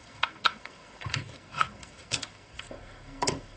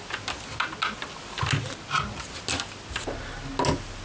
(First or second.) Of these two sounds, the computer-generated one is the first